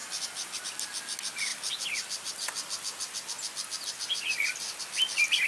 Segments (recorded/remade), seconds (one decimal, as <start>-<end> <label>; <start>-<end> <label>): 0.0-5.5 recorded

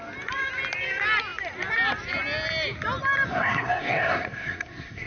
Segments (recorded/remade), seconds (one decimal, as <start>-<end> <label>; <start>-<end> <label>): 0.0-3.3 recorded; 3.3-5.1 remade

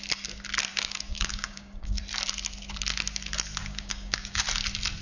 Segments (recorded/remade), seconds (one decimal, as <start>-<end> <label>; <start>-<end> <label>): 0.0-0.7 recorded; 0.7-2.0 remade; 2.0-3.6 recorded; 3.6-4.4 remade; 4.4-5.0 recorded

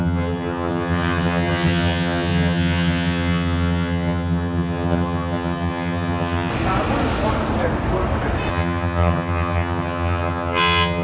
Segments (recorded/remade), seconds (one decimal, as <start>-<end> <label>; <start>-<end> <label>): 0.0-6.5 remade; 6.5-8.5 recorded; 8.5-11.0 remade

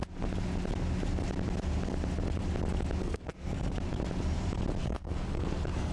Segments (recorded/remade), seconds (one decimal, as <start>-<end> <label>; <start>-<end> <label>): 0.0-3.0 recorded; 3.0-3.7 remade; 3.7-4.8 recorded; 4.8-5.9 remade